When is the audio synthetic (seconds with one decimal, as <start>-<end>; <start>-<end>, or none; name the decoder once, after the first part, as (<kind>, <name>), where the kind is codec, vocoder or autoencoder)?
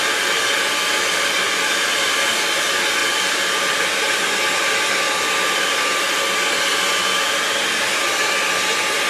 3.0-6.0 (vocoder, BigVGAN v2)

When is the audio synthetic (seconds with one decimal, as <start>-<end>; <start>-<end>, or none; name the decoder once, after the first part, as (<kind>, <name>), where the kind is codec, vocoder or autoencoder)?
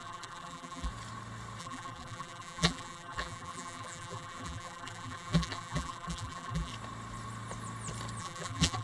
0.0-0.9 (vocoder, BigVGAN v2); 1.6-6.7; 8.2-8.8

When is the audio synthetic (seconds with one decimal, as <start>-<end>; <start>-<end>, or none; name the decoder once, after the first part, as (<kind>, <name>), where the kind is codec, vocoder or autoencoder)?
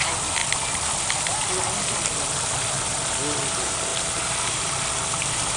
none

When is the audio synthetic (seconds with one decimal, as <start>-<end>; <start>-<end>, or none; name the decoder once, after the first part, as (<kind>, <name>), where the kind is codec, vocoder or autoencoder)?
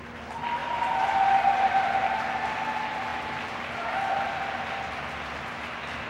0.6-1.8 (vocoder, BigVGAN v2)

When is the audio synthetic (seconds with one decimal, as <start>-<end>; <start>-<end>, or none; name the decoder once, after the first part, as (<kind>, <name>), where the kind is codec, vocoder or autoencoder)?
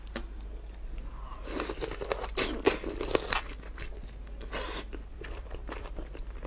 5.1-6.5 (vocoder, BigVGAN v2)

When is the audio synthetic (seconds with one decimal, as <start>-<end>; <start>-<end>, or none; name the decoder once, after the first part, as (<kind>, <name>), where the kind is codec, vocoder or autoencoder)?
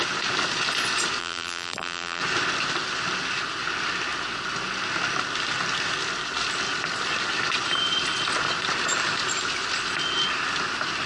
1.2-2.2 (vocoder, BigVGAN v2)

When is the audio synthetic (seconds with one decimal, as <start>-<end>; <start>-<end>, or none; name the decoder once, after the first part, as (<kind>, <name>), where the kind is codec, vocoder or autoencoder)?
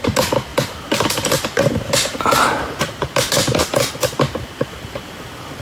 0.5-3.9 (vocoder, BigVGAN v2)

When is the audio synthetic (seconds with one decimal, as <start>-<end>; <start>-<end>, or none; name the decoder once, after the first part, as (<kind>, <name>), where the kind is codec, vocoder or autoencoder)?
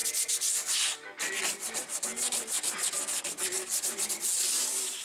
1.4-2.1 (vocoder, BigVGAN v2); 3.6-5.0